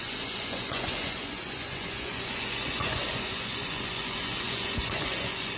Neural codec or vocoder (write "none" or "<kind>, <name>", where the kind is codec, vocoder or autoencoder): vocoder, Vocos